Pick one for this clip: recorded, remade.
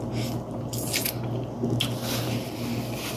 recorded